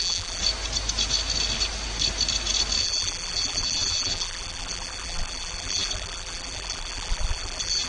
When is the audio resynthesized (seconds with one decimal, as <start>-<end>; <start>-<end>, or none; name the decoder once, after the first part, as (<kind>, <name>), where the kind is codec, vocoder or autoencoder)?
0.0-0.4 (vocoder, BigVGAN v2); 2.8-7.9